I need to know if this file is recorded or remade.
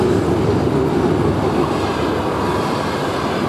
recorded